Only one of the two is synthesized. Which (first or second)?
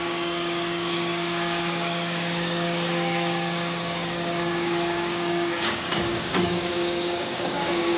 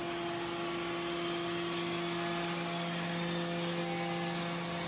first